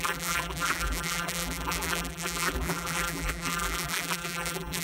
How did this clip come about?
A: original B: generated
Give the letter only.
B